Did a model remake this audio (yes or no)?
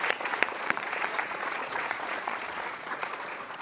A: yes